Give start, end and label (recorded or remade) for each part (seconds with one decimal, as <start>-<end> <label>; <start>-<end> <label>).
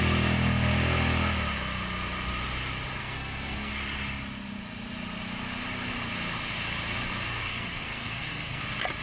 0.0-3.0 recorded; 3.0-3.7 remade; 3.7-7.4 recorded; 7.4-8.6 remade; 8.6-9.0 recorded